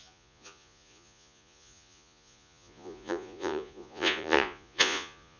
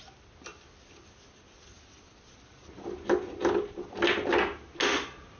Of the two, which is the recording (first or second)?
second